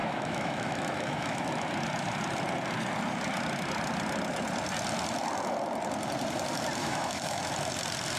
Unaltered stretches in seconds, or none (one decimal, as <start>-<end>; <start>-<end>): 1.5-6.8; 7.4-8.2